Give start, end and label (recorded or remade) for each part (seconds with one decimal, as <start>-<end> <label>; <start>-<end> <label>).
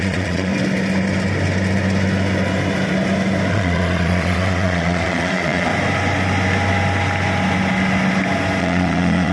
0.0-0.5 remade; 0.5-3.5 recorded; 3.5-5.7 remade; 5.7-8.6 recorded; 8.6-9.3 remade